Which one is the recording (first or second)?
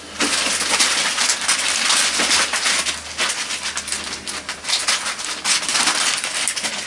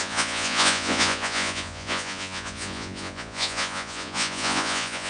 first